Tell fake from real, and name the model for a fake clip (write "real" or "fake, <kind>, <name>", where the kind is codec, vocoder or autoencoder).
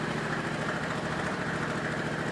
fake, vocoder, BigVGAN v2